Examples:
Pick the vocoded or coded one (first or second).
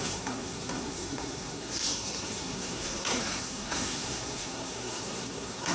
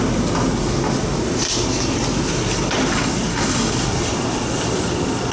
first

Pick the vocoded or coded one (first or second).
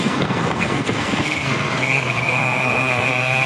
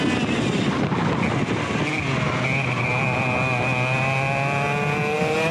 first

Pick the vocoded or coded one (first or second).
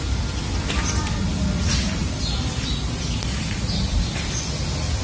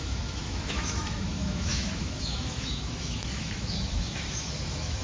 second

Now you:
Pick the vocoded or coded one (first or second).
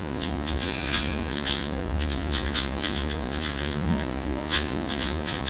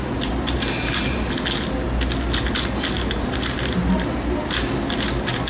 first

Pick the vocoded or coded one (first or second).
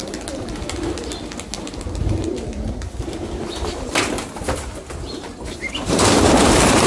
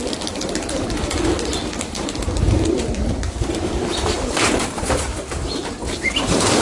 second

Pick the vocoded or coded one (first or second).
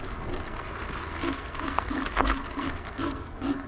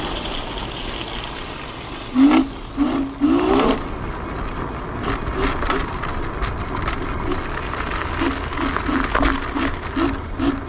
first